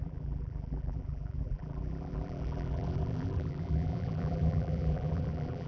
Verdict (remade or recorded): remade